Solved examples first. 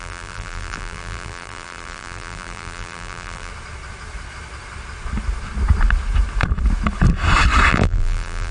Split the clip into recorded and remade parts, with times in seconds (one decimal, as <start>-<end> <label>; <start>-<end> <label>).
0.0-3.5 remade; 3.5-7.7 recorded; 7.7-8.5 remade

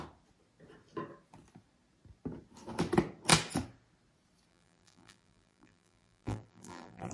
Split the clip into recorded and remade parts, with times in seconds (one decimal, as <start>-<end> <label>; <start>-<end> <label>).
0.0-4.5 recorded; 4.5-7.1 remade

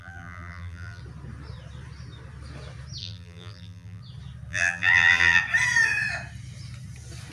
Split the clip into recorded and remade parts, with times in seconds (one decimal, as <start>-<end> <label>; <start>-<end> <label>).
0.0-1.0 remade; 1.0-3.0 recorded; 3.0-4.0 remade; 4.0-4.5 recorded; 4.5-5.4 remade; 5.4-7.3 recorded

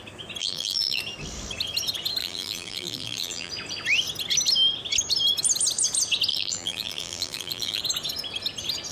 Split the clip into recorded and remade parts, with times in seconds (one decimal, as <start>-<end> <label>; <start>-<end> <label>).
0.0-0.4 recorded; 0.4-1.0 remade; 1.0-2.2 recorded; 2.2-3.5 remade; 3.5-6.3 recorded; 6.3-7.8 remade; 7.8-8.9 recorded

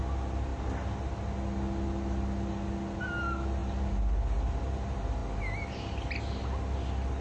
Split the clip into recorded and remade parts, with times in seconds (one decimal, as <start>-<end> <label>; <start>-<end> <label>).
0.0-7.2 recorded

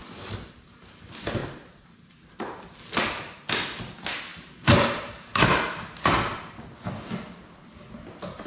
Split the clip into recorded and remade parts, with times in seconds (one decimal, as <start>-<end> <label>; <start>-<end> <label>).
0.0-1.4 recorded; 1.4-2.8 remade; 2.8-4.3 recorded; 4.3-5.8 remade; 5.8-8.5 recorded